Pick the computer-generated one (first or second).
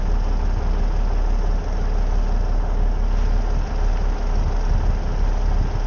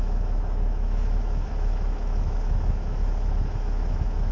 second